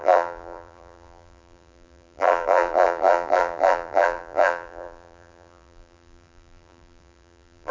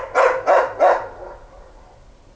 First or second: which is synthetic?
first